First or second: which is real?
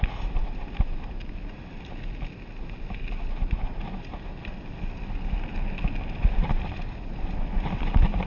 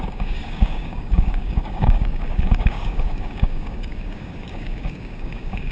first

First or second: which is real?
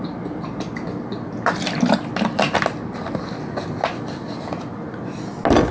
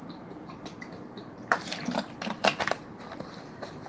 first